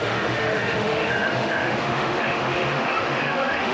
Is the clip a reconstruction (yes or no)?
yes